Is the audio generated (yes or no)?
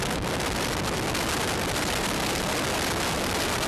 no